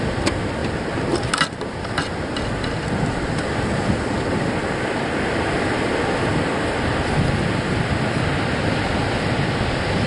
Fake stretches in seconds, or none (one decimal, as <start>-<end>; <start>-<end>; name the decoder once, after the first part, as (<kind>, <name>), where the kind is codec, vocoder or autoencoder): none

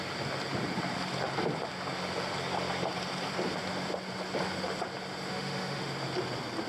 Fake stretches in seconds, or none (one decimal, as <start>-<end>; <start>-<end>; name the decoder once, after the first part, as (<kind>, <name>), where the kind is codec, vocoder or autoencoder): 5.3-5.9 (autoencoder, DAC-VAE)